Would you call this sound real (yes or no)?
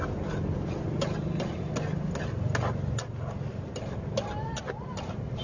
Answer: yes